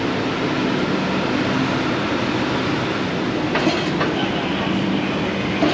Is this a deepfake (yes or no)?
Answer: no